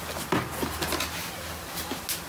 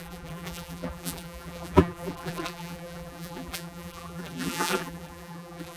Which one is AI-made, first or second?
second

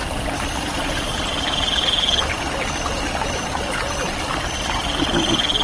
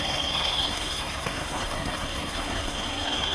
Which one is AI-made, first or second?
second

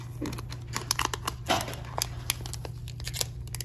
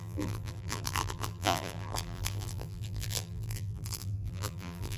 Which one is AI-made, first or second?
second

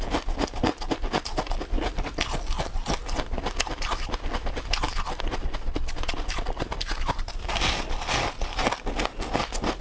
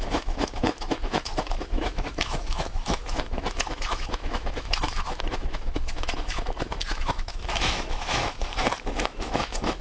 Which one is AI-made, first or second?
second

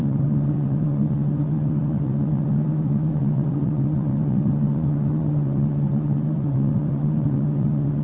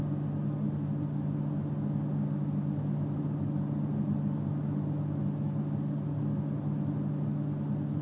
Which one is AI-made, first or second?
first